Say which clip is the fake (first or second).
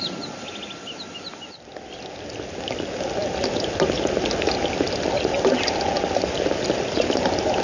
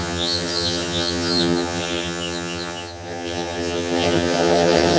second